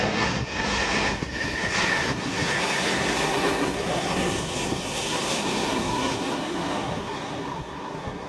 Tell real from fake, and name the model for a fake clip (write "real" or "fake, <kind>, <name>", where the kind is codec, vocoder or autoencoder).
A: fake, codec, SNAC